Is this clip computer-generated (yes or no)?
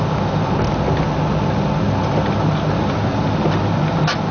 no